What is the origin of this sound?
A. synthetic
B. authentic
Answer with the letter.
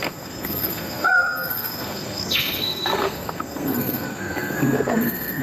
A